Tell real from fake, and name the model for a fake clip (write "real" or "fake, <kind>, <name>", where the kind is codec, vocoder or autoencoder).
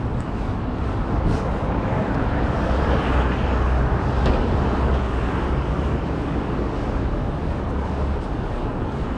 fake, codec, DAC